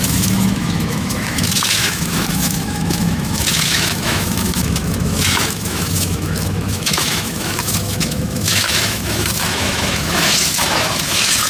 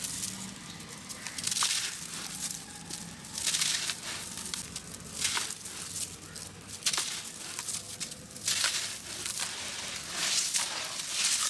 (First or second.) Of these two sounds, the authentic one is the second